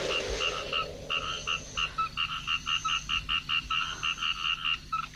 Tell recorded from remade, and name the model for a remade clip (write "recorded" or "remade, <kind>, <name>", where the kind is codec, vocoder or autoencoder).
recorded